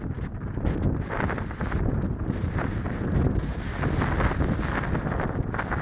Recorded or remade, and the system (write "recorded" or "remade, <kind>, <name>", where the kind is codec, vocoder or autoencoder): recorded